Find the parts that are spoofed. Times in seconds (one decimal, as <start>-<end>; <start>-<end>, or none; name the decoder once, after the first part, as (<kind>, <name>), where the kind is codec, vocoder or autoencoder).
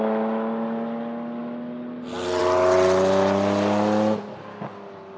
none